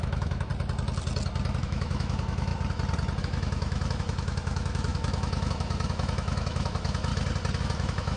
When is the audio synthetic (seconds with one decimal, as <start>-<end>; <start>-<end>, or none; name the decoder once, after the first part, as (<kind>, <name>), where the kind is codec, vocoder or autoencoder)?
0.0-0.5 (autoencoder, DAC-VAE); 1.6-2.5; 3.2-7.1; 7.6-8.2